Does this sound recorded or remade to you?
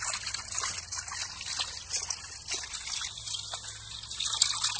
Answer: recorded